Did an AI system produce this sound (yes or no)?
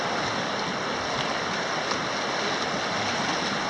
no